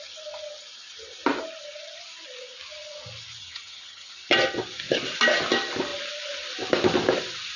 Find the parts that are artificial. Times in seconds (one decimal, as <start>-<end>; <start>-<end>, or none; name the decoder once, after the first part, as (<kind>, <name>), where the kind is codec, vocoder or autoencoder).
3.4-4.1 (vocoder, HiFi-GAN)